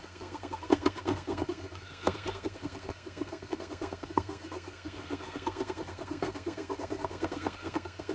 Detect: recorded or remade remade